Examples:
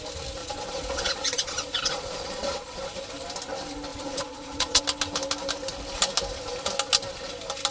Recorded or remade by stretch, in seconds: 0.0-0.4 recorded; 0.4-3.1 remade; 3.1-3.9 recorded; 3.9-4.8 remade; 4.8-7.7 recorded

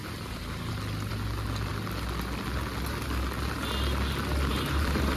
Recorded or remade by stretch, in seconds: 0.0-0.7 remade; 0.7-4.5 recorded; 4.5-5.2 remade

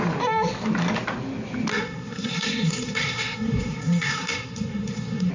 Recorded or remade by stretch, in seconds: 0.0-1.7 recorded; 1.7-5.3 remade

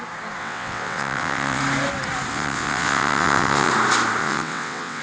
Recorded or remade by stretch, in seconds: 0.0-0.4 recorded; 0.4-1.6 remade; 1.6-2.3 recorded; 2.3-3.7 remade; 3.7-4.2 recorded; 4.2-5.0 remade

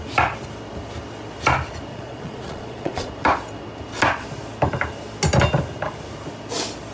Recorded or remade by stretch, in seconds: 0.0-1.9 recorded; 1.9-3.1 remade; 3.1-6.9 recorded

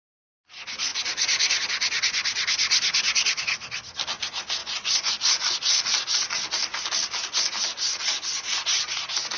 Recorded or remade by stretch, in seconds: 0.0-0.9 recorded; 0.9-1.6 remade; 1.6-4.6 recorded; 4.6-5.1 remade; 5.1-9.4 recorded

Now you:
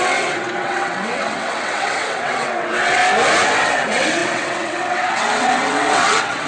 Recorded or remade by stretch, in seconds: 0.0-3.0 remade; 3.0-3.6 recorded; 3.6-6.5 remade